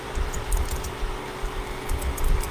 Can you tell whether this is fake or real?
real